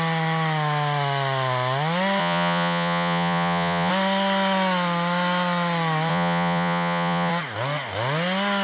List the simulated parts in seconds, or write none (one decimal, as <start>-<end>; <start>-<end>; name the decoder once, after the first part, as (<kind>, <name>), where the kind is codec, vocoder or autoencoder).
2.2-3.9 (vocoder, Vocos); 6.1-7.3